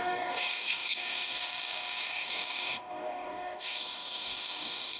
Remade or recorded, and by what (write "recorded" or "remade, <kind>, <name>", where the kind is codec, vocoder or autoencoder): remade, codec, DAC